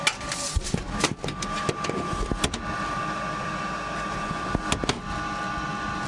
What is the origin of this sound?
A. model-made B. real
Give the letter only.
B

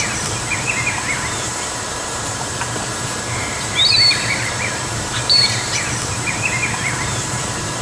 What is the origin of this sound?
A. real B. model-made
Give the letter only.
B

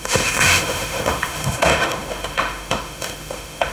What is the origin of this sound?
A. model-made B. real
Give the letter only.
A